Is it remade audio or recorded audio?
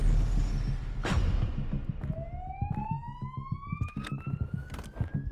recorded